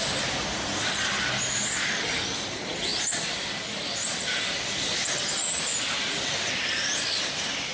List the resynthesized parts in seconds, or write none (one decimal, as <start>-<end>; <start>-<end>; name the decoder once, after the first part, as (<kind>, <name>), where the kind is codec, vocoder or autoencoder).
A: none